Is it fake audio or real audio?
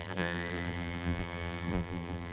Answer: fake